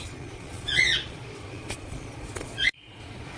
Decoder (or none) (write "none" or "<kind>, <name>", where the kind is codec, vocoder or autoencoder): vocoder, Vocos